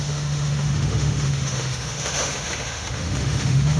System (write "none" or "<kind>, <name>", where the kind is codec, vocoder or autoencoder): autoencoder, DAC-VAE